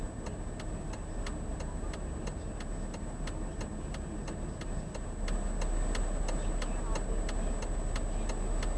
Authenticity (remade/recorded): recorded